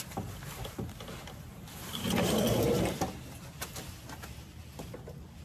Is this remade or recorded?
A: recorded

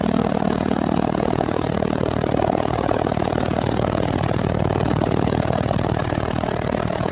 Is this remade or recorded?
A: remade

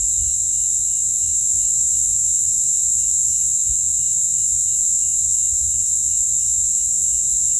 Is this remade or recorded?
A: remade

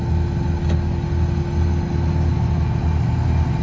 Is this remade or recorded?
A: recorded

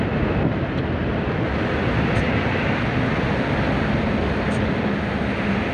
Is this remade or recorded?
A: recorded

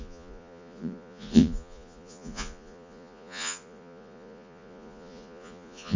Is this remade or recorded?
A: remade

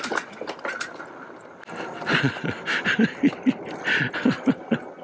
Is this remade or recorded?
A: recorded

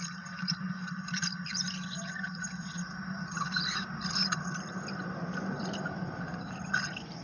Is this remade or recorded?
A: recorded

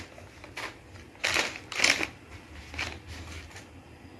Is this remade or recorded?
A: recorded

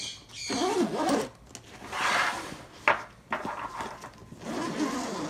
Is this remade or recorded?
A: recorded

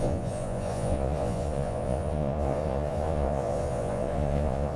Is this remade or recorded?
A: remade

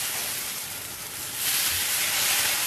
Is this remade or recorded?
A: recorded